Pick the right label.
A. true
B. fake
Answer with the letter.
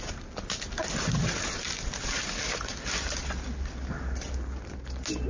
A